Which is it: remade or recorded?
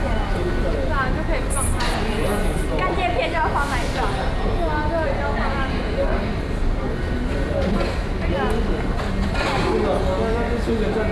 recorded